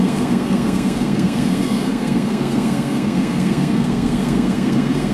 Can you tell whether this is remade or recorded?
remade